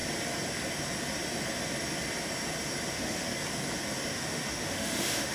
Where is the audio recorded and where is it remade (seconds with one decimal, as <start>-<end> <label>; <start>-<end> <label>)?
0.0-2.9 recorded; 2.9-3.3 remade; 3.3-4.1 recorded; 4.1-5.3 remade